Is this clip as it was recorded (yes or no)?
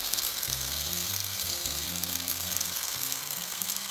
no